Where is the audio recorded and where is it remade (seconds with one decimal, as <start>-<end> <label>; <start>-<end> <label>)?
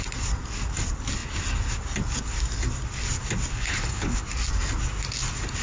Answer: 0.0-3.5 recorded; 3.5-4.2 remade; 4.2-5.6 recorded